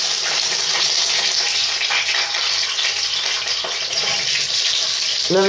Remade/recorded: recorded